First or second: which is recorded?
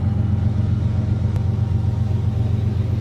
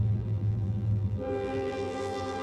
first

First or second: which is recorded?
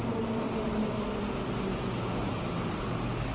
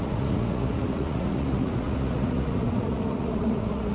first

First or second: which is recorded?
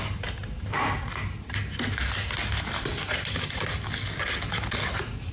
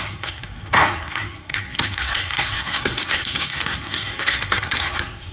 first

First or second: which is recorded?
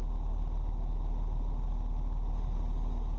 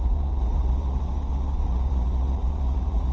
first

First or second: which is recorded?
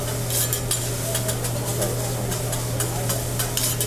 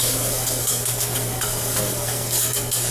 first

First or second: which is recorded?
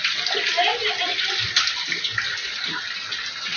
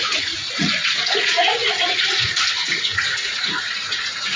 first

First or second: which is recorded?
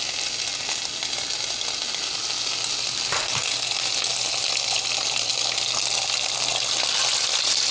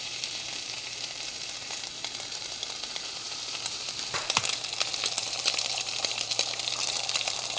first